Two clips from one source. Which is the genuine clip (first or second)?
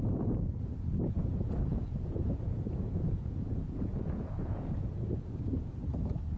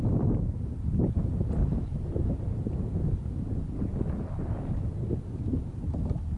second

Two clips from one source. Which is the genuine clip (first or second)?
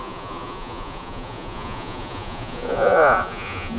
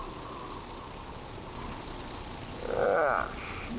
second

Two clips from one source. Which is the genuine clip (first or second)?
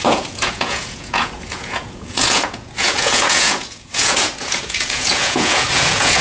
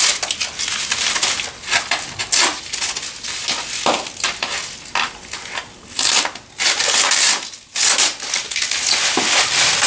second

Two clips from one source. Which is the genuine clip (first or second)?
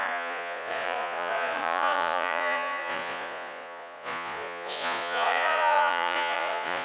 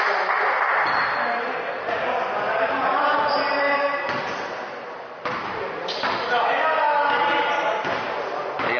second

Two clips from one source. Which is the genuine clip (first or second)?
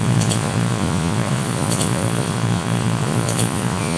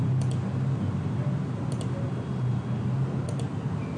second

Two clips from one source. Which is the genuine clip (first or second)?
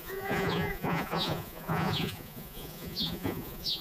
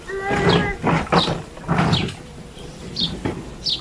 second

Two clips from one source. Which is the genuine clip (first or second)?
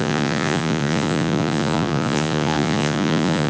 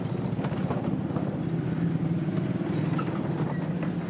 second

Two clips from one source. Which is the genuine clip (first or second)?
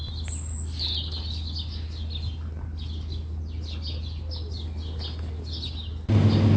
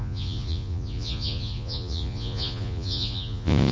first